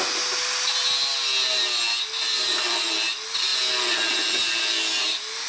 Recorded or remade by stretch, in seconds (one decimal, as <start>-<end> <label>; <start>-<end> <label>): 0.0-5.5 recorded